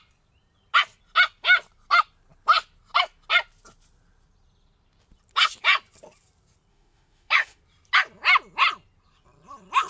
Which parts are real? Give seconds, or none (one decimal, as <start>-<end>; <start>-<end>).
0.0-6.7; 7.6-9.9